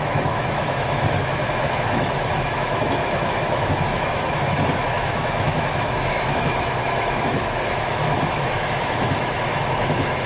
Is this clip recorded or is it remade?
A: remade